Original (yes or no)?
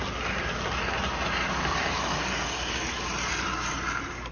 yes